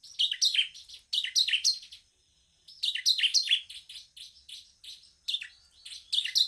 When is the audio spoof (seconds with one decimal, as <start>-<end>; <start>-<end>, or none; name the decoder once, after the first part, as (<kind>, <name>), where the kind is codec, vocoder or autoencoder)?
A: none